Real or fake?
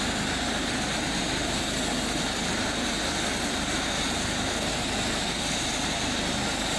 real